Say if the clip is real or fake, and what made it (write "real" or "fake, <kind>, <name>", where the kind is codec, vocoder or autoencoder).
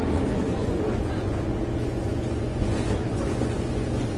fake, vocoder, Vocos